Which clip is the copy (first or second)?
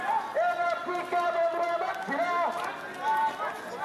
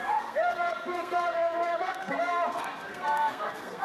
second